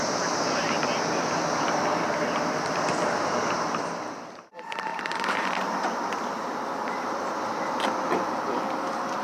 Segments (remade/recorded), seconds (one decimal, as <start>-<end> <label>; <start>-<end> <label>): 0.0-0.6 recorded; 0.6-2.9 remade; 2.9-4.9 recorded; 4.9-7.7 remade; 7.7-9.2 recorded